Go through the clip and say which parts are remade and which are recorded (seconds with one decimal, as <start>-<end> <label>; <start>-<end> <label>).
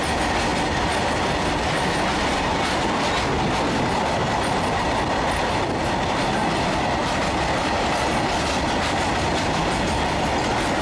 0.0-10.8 recorded